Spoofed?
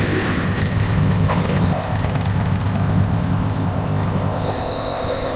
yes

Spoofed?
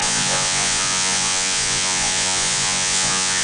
yes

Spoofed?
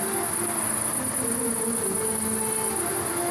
no